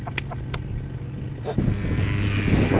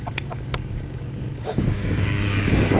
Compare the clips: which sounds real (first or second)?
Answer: first